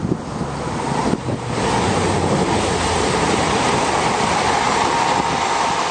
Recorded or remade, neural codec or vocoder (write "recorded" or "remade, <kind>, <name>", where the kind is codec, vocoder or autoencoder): recorded